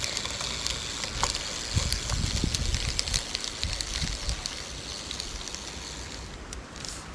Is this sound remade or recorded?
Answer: recorded